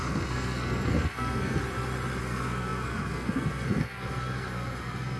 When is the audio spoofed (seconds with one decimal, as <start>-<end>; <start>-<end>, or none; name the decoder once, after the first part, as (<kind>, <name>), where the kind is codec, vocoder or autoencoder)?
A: 0.0-1.6 (codec, SNAC); 2.2-5.2